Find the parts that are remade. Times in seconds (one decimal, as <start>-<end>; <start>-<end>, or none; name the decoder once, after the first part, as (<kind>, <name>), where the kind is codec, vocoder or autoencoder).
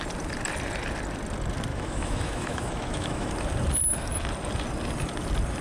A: 1.7-3.3 (autoencoder, DAC-VAE)